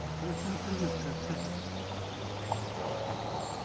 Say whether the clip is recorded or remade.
recorded